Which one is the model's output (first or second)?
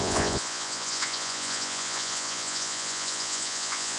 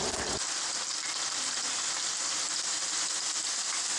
first